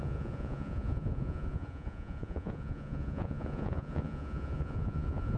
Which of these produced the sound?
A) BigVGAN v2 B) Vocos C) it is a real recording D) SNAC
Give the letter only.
B